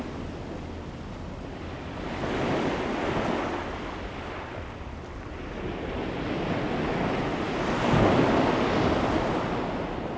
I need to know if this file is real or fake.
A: real